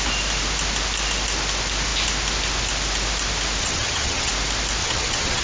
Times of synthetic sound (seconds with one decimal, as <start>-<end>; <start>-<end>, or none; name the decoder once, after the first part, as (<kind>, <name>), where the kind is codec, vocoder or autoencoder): 3.6-4.3 (vocoder, HiFi-GAN); 4.8-5.4